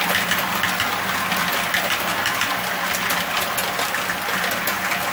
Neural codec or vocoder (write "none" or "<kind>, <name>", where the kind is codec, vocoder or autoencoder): none